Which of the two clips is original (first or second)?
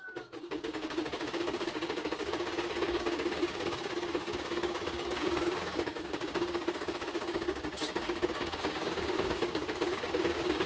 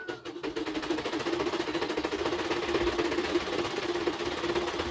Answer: second